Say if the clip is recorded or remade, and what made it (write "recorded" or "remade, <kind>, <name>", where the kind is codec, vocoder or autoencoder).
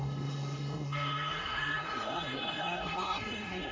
remade, codec, SNAC